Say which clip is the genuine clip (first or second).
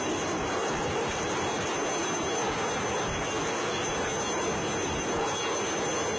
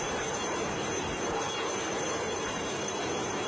first